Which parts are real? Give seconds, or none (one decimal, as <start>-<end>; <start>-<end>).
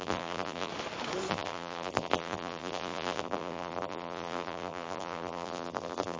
0.7-1.3